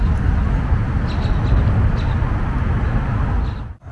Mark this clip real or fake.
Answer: real